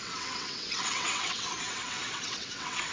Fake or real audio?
fake